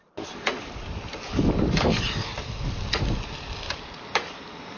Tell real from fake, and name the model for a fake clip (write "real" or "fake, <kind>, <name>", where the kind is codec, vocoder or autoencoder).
real